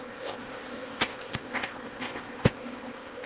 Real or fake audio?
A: fake